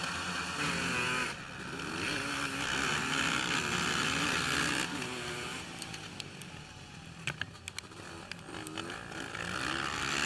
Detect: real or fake real